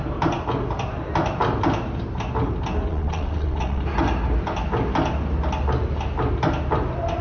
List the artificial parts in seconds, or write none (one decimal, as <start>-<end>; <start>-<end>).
2.9-3.8